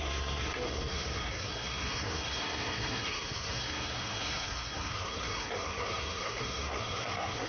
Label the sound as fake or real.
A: fake